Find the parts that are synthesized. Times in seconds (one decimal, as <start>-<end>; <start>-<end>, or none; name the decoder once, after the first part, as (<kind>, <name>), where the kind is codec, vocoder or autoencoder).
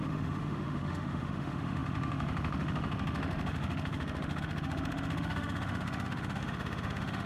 0.0-7.3 (autoencoder, DAC-VAE)